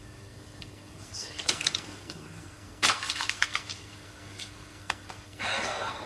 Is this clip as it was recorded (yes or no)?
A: no